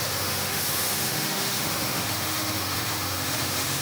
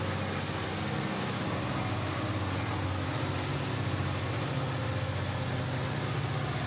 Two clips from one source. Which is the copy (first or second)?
first